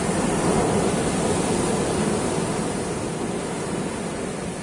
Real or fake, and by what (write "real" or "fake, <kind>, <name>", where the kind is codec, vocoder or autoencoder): real